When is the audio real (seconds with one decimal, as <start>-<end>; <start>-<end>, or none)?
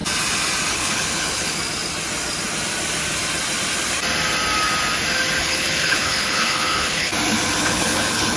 0.0-0.7; 1.6-5.4; 7.1-7.6